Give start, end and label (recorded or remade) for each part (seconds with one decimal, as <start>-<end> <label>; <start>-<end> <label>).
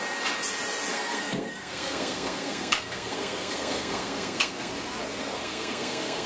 0.0-0.9 recorded; 0.9-4.7 remade; 4.7-5.2 recorded; 5.2-6.3 remade